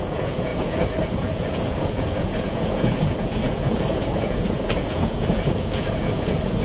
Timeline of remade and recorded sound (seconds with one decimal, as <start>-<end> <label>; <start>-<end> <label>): 0.0-6.6 remade